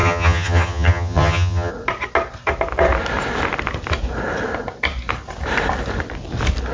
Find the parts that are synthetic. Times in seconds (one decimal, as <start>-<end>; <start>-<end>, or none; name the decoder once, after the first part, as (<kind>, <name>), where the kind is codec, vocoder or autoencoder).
0.0-1.7 (vocoder, HiFi-GAN)